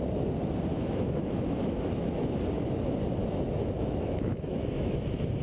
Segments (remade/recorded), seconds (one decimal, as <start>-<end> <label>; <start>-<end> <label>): 0.0-0.7 recorded; 0.7-2.4 remade; 2.4-3.2 recorded; 3.2-5.4 remade

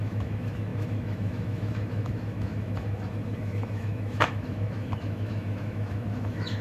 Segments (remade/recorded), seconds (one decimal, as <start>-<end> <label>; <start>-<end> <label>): 0.0-6.6 remade

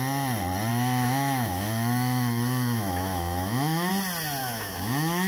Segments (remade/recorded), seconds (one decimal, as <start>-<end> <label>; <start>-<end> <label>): 0.0-0.7 recorded; 0.7-3.9 remade; 3.9-4.4 recorded; 4.4-5.3 remade

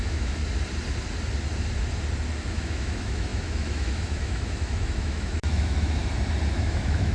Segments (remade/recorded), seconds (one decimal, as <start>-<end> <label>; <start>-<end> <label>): 0.0-0.4 remade; 0.4-2.5 recorded; 2.5-6.0 remade; 6.0-6.5 recorded; 6.5-7.1 remade

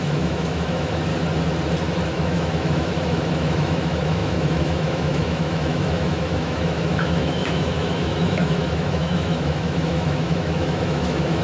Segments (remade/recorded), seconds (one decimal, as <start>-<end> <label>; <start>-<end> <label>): 0.0-1.1 remade; 1.1-2.1 recorded; 2.1-11.4 remade

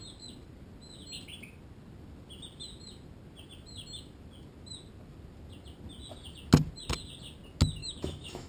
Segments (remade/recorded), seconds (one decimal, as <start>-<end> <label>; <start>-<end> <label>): 0.0-7.8 recorded; 7.8-8.5 remade